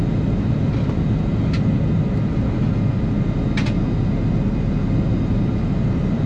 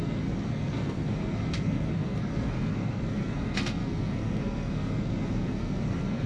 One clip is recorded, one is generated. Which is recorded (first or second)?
first